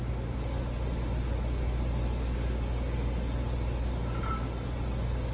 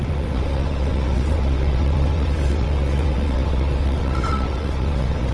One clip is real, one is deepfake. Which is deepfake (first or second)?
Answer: second